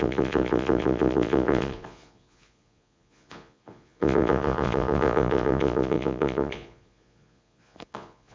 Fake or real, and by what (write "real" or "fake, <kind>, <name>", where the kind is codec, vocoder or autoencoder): fake, vocoder, Vocos